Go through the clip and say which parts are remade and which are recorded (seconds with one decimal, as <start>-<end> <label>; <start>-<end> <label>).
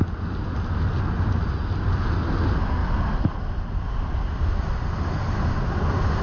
0.0-6.2 recorded